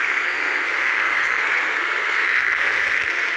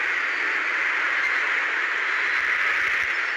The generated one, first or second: first